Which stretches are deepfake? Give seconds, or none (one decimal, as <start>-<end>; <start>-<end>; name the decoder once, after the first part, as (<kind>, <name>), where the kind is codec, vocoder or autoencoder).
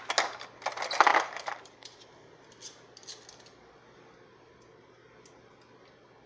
1.1-2.1 (vocoder, BigVGAN v2)